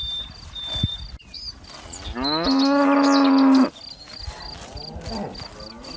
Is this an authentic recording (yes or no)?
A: yes